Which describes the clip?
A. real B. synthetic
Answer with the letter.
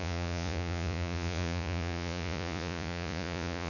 B